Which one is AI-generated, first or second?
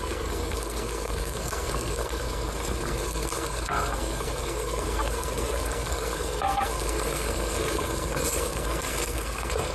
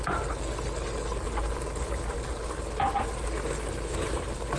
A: first